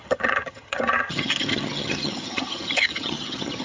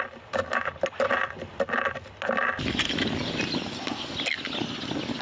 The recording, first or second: second